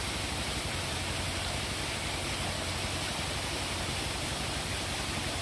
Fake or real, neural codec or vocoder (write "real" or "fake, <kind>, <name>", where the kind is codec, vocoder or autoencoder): fake, vocoder, BigVGAN v2